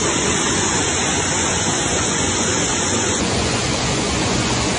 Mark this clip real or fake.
fake